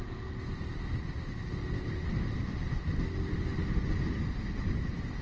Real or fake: real